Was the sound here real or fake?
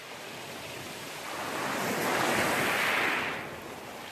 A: real